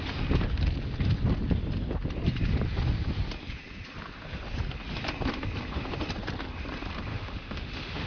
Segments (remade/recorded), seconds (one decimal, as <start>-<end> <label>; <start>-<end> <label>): 0.0-7.1 recorded; 7.1-8.1 remade